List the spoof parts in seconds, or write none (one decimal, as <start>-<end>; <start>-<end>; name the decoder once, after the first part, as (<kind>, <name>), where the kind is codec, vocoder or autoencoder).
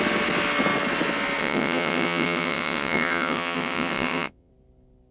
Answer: 1.4-4.5 (vocoder, WaveNeXt)